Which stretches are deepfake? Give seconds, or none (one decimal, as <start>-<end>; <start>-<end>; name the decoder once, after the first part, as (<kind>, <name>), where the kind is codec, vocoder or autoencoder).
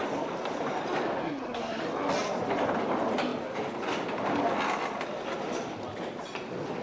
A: 1.2-1.8 (codec, SNAC)